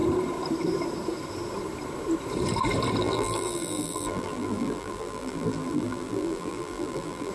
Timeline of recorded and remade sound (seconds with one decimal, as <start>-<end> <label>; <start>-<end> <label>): 0.0-3.0 recorded; 3.0-7.3 remade